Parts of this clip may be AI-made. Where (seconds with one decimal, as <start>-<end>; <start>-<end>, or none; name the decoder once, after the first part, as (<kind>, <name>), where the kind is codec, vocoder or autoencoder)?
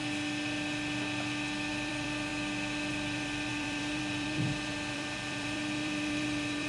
1.7-2.3 (vocoder, BigVGAN v2); 2.9-6.7